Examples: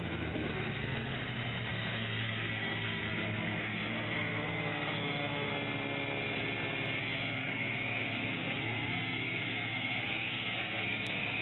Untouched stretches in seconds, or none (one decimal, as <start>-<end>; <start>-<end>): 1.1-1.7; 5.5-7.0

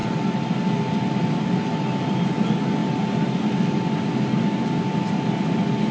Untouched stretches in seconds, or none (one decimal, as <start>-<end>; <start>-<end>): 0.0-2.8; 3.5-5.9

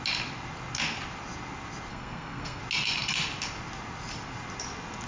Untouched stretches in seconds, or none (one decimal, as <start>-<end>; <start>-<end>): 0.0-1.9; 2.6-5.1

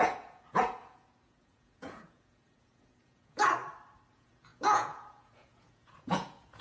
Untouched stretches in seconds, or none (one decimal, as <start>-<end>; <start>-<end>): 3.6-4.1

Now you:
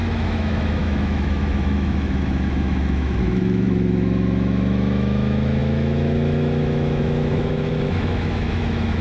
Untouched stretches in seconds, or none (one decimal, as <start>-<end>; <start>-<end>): none

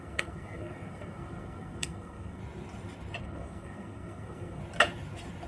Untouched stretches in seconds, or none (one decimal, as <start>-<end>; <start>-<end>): 2.4-3.2; 4.6-5.5

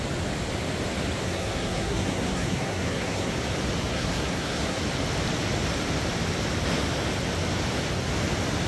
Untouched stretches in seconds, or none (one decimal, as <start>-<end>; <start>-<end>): 0.0-1.2; 3.3-3.9; 4.8-8.7